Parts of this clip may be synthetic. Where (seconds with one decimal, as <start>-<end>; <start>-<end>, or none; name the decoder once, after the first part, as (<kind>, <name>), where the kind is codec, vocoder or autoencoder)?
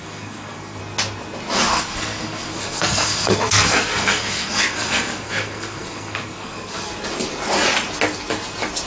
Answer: 0.0-0.8 (codec, SNAC); 1.7-6.9